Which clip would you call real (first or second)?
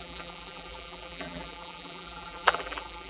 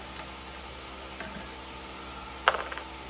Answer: second